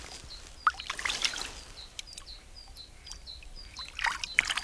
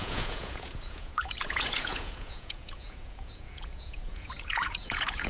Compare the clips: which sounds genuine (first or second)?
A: first